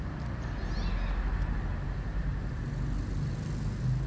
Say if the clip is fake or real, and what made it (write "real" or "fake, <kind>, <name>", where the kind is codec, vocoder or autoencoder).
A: real